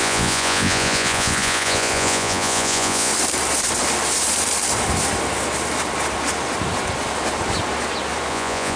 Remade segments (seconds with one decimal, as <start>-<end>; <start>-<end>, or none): 0.0-3.1; 8.3-8.8